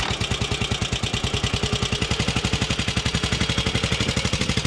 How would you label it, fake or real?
real